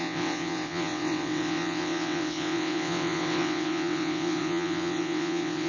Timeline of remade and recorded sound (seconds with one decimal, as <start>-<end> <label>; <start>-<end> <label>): 0.0-5.7 remade